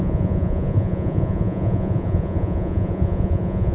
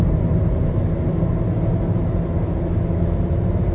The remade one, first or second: first